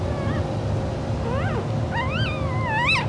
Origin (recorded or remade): recorded